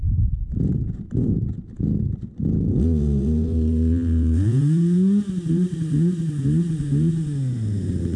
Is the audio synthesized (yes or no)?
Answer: yes